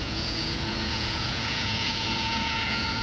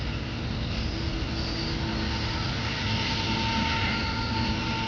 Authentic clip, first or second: second